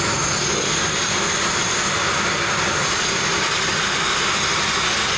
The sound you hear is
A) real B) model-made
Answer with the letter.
A